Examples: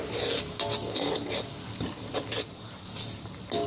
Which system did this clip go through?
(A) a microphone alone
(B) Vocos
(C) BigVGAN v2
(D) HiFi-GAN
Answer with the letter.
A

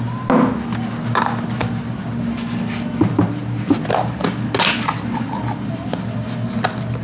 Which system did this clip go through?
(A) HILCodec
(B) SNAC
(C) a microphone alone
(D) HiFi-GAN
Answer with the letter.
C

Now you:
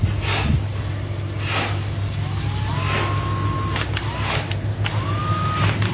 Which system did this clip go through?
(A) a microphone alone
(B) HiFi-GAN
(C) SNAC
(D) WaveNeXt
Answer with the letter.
A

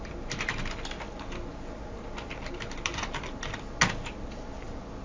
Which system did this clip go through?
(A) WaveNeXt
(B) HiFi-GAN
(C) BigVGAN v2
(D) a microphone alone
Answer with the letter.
D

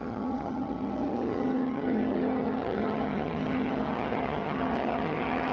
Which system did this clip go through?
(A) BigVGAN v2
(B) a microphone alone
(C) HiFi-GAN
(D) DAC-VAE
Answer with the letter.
C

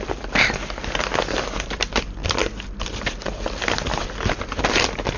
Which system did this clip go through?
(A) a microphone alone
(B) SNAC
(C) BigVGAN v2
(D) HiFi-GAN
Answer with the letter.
A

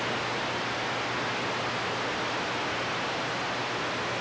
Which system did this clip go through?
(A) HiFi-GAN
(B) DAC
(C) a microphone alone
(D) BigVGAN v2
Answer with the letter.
C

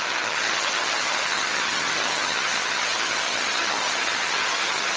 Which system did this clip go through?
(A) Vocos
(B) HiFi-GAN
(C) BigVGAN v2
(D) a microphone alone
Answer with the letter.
B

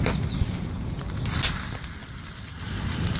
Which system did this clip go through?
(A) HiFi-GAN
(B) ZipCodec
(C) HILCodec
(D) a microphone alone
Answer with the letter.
D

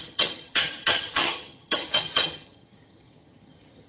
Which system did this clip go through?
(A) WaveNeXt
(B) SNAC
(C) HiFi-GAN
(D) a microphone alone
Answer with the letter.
C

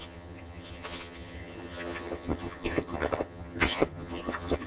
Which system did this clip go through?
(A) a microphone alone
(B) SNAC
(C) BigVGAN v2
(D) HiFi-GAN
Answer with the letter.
D